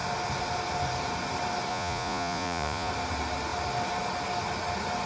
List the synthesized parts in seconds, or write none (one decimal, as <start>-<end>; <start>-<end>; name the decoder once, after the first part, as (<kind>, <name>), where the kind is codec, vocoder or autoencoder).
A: 1.7-2.9 (vocoder, Vocos)